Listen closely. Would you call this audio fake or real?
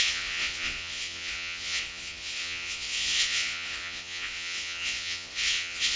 fake